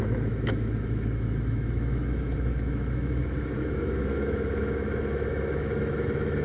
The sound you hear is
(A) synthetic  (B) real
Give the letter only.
A